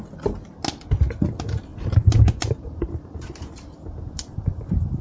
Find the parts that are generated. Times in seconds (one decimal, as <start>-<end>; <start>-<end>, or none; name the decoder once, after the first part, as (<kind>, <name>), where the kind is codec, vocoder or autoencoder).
1.7-5.0 (vocoder, BigVGAN v2)